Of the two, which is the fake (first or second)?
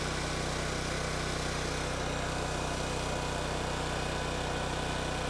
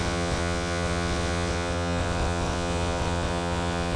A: second